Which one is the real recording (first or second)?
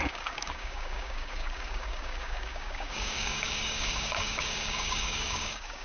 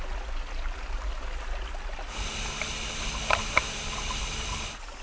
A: second